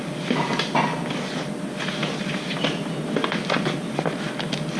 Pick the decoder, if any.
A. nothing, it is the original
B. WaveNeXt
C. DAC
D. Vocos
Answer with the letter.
A